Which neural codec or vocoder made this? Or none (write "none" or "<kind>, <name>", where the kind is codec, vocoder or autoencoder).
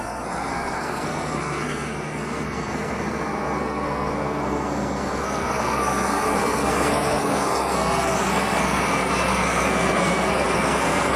codec, SNAC